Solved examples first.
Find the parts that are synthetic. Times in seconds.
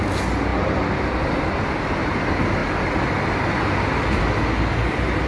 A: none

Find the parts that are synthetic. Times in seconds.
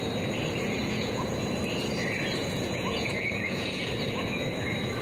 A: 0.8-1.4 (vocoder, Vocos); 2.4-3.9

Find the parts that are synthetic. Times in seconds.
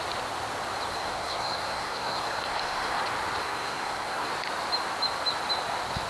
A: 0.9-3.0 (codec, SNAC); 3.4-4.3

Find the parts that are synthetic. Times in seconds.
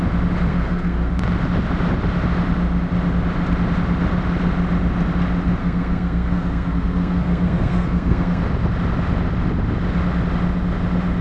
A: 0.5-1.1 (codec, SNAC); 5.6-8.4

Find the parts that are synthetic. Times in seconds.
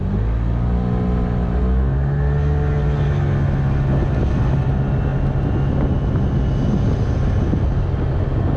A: none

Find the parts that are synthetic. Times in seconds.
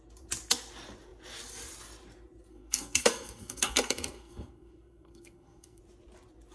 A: 2.5-5.8 (codec, SNAC)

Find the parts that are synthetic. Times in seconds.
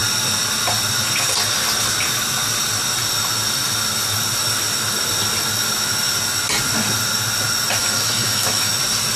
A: 7.8-8.7 (autoencoder, DAC-VAE)